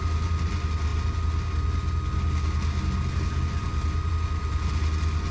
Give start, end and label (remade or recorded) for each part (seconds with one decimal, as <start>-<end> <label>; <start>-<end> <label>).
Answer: 0.0-5.3 recorded